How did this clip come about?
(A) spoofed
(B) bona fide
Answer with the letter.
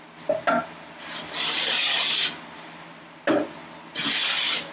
B